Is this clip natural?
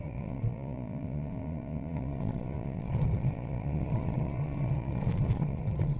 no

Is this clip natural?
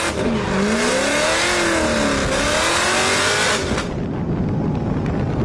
yes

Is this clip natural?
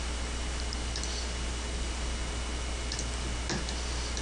yes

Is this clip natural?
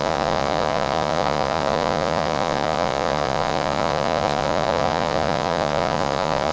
no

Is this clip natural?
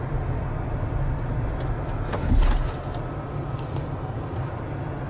yes